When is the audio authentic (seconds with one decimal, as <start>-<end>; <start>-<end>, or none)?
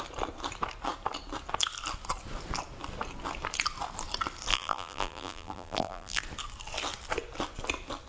0.0-4.5; 6.2-8.1